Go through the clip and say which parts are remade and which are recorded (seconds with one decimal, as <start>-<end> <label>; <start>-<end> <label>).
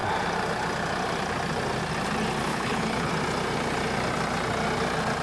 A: 0.0-2.5 recorded; 2.5-3.1 remade; 3.1-5.2 recorded